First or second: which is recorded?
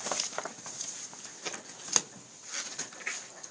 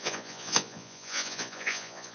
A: first